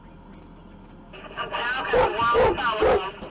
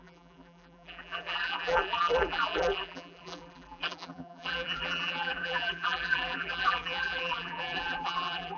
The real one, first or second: first